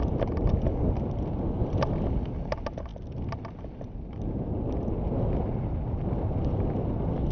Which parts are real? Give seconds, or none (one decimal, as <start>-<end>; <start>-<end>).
0.0-7.3